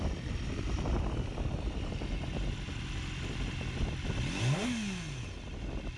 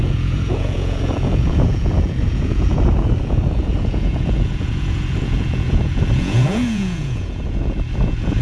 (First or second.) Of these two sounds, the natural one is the first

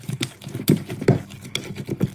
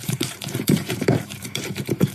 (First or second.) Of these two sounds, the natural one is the first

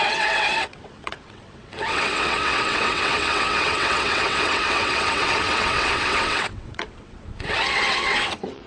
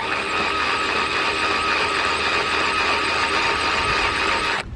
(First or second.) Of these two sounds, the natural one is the second